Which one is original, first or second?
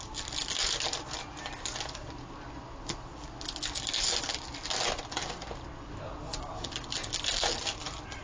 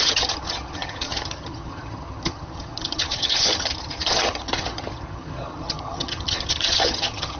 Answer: first